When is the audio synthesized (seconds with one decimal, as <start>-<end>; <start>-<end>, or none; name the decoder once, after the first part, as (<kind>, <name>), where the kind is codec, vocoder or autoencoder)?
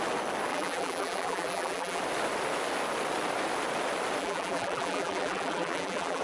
0.5-2.0 (vocoder, BigVGAN v2); 4.2-6.2